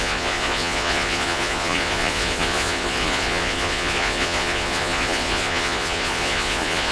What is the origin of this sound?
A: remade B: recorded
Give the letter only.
A